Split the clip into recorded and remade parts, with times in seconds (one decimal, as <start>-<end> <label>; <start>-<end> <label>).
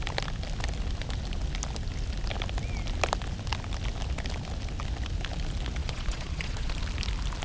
0.0-5.8 recorded; 5.8-6.7 remade; 6.7-7.4 recorded